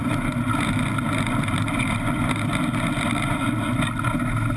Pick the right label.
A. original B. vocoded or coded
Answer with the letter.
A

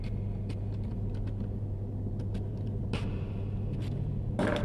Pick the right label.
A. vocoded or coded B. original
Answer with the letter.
B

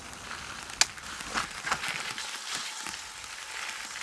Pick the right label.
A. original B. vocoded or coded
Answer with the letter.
A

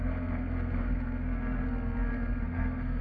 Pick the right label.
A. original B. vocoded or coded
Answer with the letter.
B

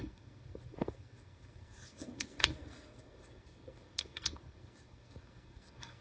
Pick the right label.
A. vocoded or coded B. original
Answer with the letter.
A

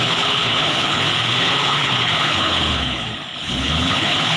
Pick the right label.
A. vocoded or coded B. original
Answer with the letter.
A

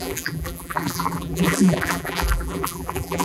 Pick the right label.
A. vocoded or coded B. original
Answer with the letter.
A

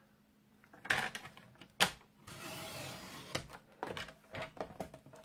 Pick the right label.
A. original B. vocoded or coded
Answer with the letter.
A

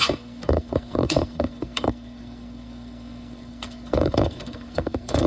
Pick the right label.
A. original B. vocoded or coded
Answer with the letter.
B